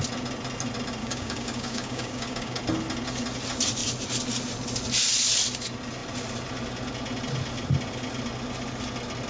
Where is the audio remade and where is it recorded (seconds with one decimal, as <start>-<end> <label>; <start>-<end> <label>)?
0.0-1.0 recorded; 1.0-2.6 remade; 2.6-9.3 recorded